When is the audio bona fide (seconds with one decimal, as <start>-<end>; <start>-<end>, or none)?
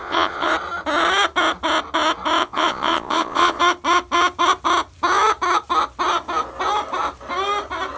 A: 0.5-2.4; 3.6-8.0